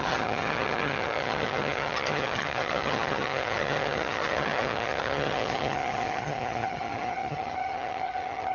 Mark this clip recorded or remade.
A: remade